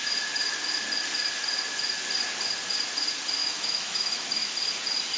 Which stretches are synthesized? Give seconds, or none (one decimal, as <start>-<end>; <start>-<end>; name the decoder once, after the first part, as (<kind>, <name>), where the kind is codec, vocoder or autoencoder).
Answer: 3.4-4.5 (autoencoder, DAC-VAE)